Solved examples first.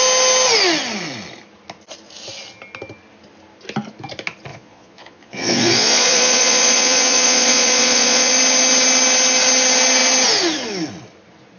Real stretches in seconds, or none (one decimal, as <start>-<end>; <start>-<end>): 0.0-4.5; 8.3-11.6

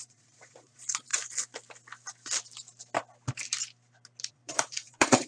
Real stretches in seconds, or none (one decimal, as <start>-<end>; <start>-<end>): 1.1-4.3

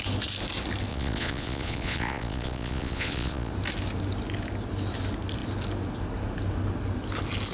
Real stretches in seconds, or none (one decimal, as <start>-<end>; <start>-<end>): 0.0-0.9; 3.5-7.5